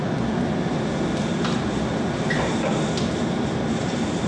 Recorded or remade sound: recorded